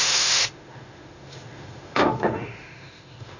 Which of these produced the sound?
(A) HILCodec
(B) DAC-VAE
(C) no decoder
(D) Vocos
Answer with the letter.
B